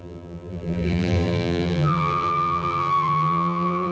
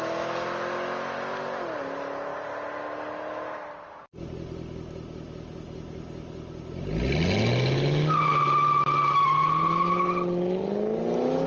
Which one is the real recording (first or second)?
second